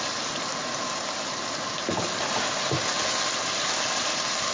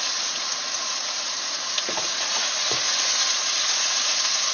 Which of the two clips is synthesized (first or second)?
second